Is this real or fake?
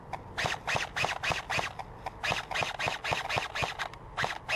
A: real